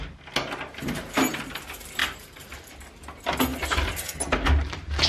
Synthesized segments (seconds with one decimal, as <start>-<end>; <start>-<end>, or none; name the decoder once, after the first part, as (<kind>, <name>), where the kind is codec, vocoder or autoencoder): 2.0-2.7 (vocoder, BigVGAN v2)